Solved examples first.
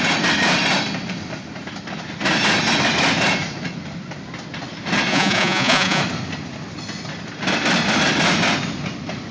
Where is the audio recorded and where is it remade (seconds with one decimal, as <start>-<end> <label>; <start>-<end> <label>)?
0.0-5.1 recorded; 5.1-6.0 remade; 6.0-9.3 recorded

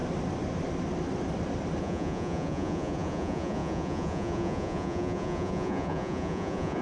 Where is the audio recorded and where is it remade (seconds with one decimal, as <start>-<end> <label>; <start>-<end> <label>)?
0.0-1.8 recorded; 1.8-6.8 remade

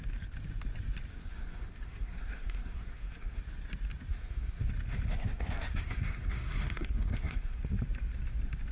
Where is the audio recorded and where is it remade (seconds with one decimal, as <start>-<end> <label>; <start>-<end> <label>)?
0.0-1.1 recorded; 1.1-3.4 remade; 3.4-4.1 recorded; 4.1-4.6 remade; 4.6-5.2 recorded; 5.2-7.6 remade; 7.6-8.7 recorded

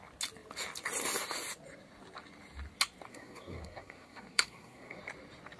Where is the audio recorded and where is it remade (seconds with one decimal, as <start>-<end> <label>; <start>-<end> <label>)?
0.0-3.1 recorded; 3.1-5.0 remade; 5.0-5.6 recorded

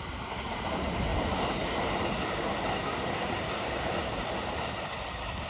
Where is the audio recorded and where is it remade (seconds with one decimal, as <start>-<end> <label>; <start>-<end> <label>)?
0.0-5.5 recorded